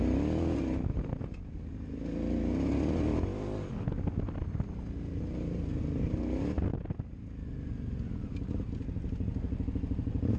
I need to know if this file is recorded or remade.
recorded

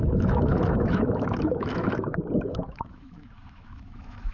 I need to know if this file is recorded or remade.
remade